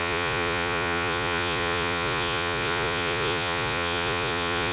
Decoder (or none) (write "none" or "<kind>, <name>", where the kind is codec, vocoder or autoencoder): vocoder, Vocos